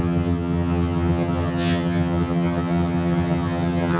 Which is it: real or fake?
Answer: fake